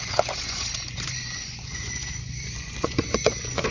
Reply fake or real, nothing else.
fake